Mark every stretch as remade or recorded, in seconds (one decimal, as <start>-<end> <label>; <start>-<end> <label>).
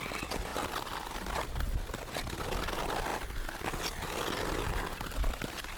0.0-5.8 recorded